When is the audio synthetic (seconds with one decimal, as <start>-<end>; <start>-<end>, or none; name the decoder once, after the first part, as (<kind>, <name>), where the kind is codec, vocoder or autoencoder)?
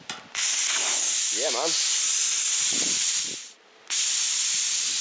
none